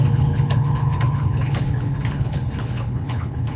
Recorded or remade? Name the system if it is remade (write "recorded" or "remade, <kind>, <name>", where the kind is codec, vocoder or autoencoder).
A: remade, codec, HILCodec